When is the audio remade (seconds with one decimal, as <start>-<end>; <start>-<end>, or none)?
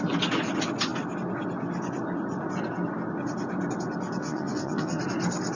4.2-5.0